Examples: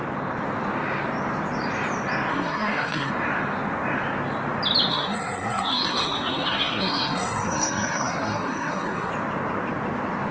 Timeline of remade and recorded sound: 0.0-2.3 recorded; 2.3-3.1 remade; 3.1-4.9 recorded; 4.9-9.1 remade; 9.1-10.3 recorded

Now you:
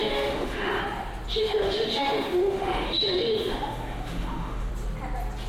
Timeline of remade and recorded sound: 0.0-0.8 remade; 0.8-1.4 recorded; 1.4-4.7 remade; 4.7-5.5 recorded

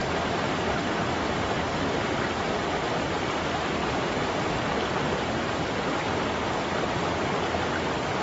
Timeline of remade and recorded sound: 0.0-3.8 recorded; 3.8-4.5 remade; 4.5-8.2 recorded